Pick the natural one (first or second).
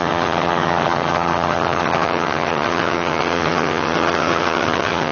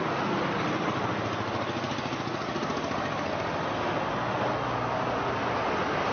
second